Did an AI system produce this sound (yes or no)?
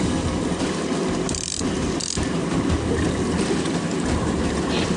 yes